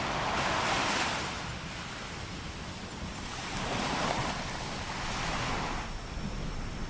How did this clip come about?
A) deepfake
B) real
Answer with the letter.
B